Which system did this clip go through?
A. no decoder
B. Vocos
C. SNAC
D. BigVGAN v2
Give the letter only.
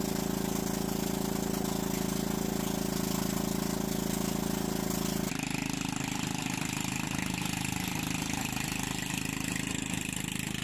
A